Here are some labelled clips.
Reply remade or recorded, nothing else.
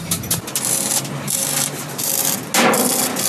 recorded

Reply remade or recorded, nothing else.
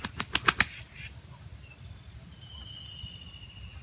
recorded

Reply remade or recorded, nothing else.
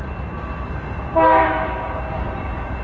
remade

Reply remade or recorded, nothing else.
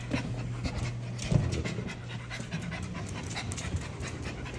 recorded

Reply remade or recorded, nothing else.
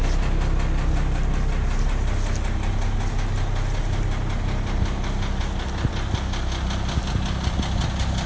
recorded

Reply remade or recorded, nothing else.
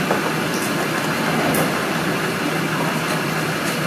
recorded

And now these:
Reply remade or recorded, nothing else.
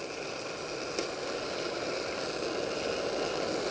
recorded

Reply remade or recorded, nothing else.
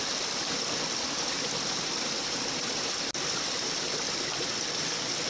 recorded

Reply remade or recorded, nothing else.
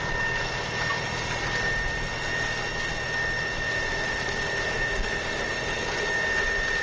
recorded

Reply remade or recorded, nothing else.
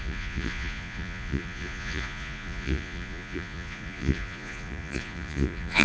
remade